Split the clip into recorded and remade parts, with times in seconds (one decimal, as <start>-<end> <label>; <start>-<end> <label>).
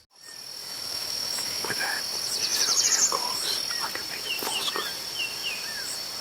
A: 0.0-0.6 recorded; 0.6-2.0 remade; 2.0-6.2 recorded